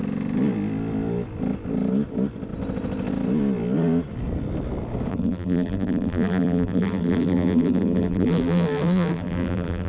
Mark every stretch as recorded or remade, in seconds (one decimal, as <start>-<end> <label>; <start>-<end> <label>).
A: 0.0-5.1 recorded; 5.1-9.9 remade